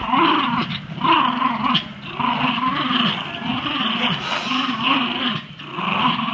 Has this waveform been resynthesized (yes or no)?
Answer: no